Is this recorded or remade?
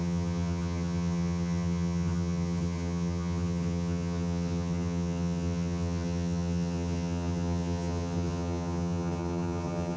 remade